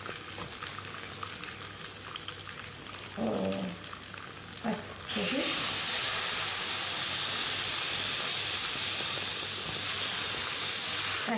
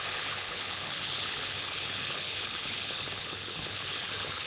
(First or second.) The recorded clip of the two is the first